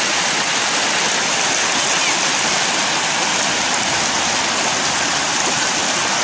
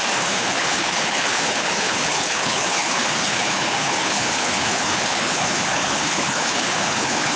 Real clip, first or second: first